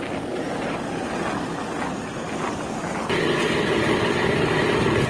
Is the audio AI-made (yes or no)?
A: no